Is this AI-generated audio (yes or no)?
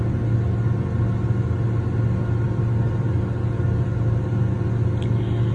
no